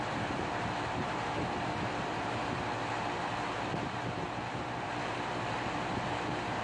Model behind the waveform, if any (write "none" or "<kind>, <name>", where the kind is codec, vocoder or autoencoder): vocoder, BigVGAN v2